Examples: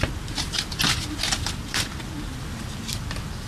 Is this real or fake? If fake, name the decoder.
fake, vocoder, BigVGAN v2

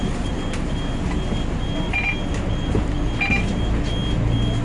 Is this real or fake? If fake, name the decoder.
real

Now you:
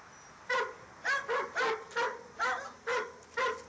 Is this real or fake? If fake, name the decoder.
real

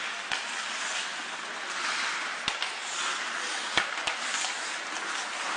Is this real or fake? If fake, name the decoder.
real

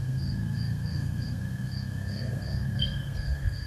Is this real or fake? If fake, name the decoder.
fake, codec, SNAC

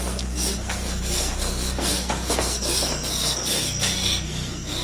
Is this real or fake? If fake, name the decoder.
fake, codec, SNAC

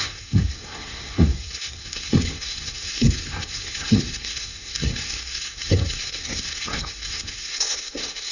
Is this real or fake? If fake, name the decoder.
fake, codec, SNAC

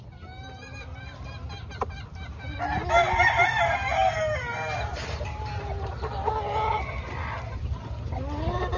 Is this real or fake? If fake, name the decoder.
real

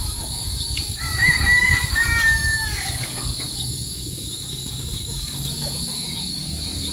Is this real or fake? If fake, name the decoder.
fake, codec, DAC